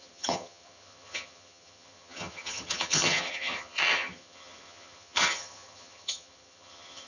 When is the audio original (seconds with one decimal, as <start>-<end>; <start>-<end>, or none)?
none